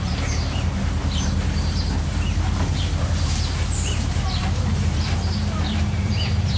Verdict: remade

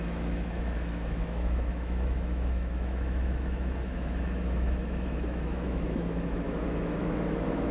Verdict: remade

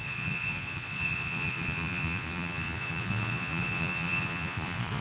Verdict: remade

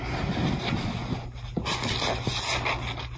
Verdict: recorded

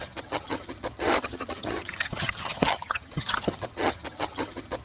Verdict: remade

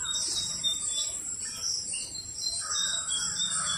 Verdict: remade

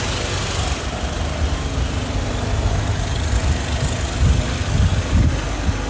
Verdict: recorded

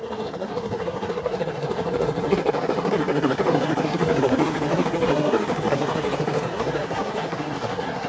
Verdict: remade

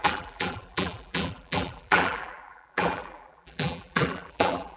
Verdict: remade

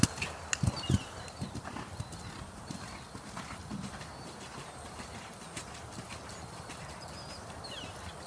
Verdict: recorded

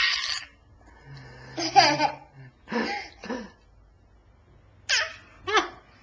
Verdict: recorded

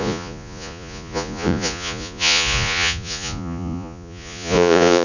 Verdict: remade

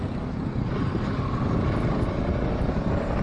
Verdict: recorded